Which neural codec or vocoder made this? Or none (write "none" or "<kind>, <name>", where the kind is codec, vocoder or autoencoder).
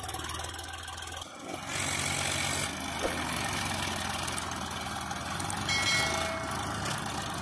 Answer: none